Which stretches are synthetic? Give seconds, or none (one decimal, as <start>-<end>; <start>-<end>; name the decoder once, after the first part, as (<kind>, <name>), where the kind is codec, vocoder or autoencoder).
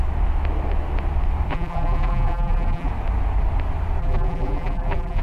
1.5-2.9 (vocoder, BigVGAN v2); 4.0-5.2